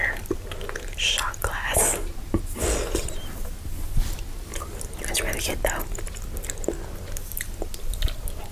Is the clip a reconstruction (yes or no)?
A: no